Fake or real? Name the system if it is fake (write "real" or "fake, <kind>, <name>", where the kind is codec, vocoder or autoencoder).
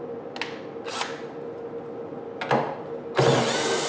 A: real